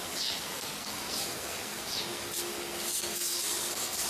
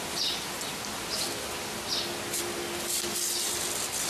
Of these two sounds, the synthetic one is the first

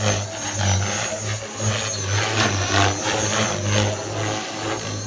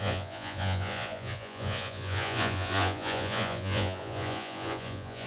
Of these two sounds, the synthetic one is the second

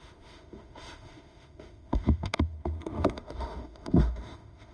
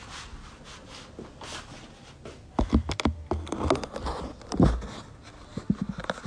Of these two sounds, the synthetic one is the first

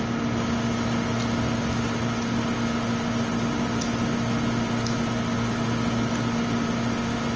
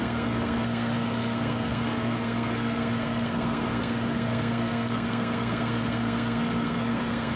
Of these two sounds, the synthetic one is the second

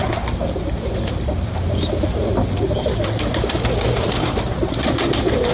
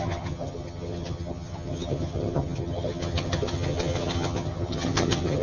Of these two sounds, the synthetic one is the second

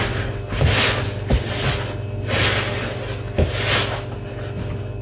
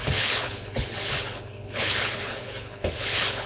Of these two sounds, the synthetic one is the second